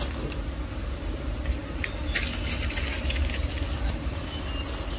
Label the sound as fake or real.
real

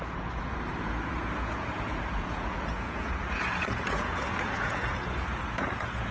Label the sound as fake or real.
fake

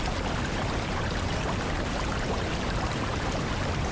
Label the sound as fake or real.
fake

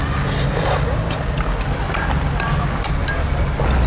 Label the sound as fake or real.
real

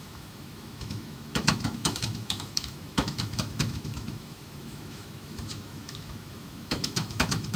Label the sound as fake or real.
fake